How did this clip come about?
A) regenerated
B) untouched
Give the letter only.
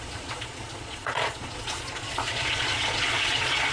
A